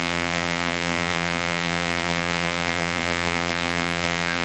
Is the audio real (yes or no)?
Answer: no